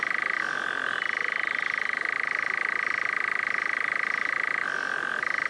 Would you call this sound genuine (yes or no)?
yes